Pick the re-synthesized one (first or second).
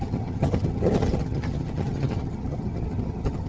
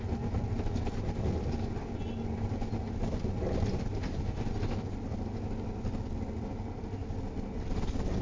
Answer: first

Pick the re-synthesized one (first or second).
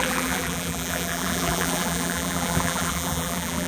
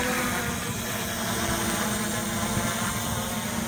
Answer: first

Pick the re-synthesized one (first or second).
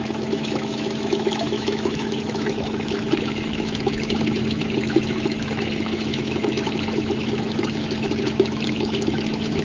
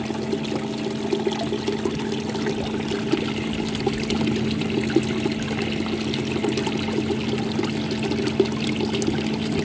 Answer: first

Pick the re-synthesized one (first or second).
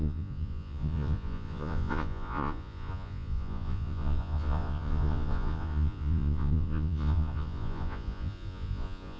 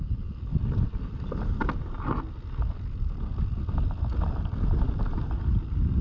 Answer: first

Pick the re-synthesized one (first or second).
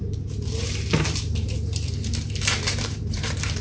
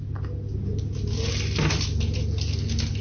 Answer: first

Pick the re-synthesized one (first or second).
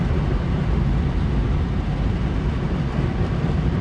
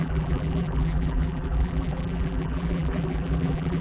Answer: second